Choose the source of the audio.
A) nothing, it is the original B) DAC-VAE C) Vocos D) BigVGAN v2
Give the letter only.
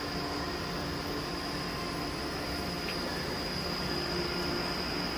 A